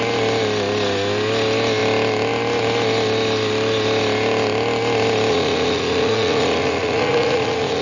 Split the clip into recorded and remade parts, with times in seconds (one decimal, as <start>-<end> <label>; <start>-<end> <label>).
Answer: 0.0-5.3 recorded; 5.3-7.8 remade